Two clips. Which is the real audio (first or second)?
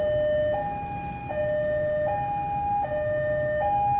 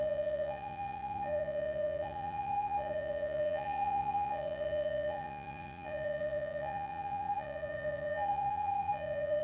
first